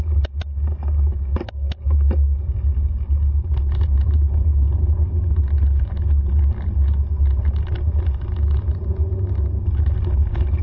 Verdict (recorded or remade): recorded